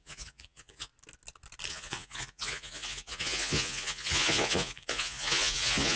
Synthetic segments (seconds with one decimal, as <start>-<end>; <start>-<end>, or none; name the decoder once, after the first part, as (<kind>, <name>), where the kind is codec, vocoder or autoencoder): 0.0-0.9 (vocoder, Vocos); 1.7-6.0